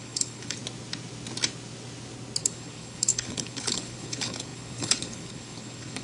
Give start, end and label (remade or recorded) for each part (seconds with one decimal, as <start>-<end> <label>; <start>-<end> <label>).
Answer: 0.0-0.6 remade; 0.6-2.4 recorded; 2.4-6.0 remade